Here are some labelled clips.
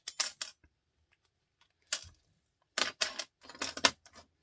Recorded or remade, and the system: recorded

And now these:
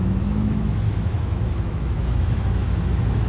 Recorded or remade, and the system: remade, autoencoder, DAC-VAE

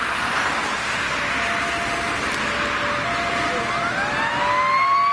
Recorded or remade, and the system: recorded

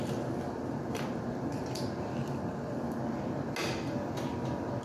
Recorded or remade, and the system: recorded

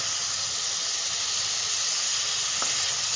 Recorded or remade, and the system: recorded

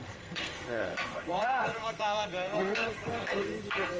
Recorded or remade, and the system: remade, codec, SNAC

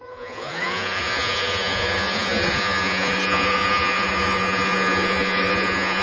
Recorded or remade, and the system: remade, vocoder, Vocos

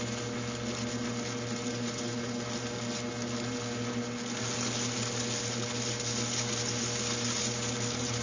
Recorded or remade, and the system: recorded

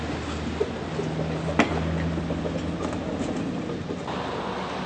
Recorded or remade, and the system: recorded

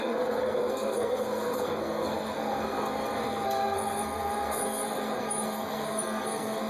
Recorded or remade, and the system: remade, codec, SNAC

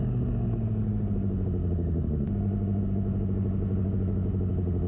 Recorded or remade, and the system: recorded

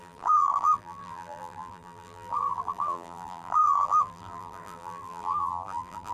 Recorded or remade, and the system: remade, vocoder, BigVGAN v2